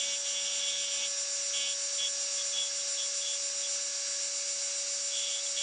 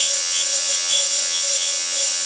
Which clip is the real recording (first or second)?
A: first